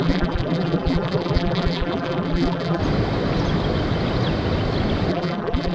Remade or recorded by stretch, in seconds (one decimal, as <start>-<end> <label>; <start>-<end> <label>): 0.0-2.8 remade; 2.8-5.1 recorded; 5.1-5.7 remade